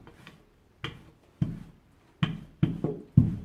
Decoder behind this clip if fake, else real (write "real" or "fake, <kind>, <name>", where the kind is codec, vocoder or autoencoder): real